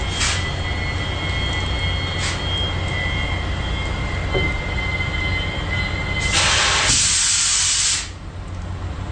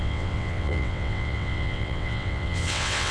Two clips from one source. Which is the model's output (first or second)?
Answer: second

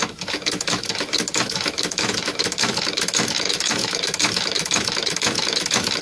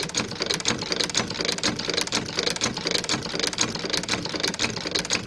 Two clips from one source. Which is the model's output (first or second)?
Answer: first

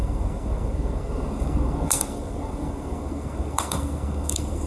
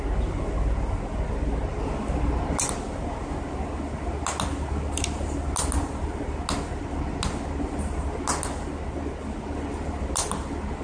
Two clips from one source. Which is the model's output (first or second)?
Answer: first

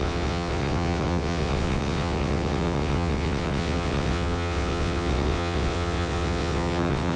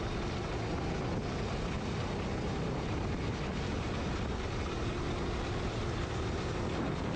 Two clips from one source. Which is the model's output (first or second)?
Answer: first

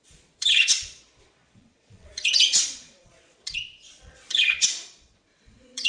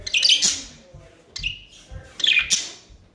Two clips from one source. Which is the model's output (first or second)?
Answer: first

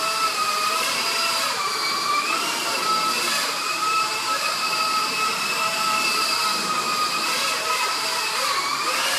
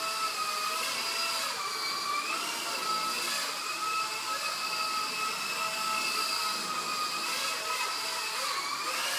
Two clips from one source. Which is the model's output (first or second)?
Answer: first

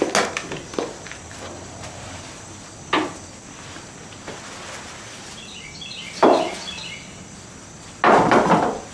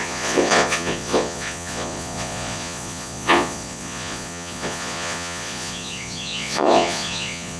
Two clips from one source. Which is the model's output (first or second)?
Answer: second